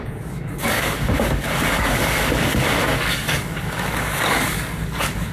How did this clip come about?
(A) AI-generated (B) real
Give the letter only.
A